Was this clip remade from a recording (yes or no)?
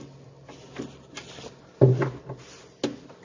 no